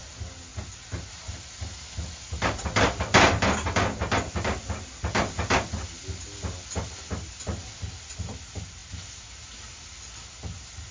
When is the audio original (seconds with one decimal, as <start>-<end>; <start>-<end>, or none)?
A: 0.0-10.9